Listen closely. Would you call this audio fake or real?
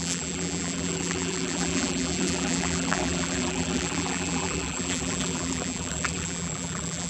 fake